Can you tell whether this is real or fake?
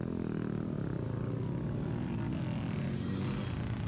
real